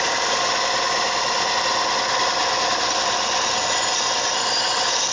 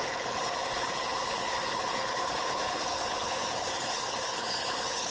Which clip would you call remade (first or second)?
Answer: second